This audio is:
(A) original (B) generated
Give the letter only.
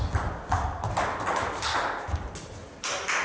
A